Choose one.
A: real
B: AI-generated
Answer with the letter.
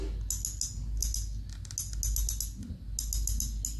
A